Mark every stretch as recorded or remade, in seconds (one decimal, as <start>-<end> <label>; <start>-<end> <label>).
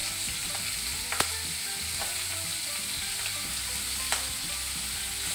0.0-5.3 recorded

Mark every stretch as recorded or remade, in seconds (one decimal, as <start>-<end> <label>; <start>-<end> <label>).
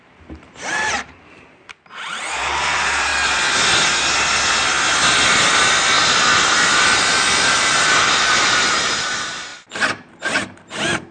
0.0-3.1 remade; 3.1-7.4 recorded; 7.4-9.5 remade; 9.5-10.1 recorded; 10.1-11.1 remade